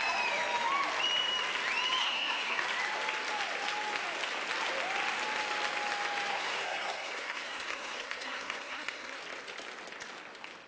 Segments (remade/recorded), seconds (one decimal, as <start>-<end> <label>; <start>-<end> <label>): 0.0-2.0 recorded; 2.0-2.6 remade; 2.6-6.3 recorded; 6.3-9.2 remade; 9.2-10.7 recorded